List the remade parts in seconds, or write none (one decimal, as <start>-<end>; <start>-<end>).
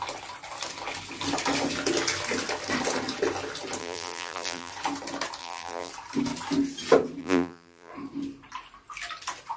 3.8-4.7; 5.4-5.9; 7.2-7.9